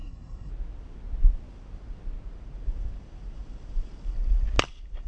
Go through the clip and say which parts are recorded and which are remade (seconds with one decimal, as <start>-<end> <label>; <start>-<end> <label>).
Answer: 0.0-0.5 remade; 0.5-5.1 recorded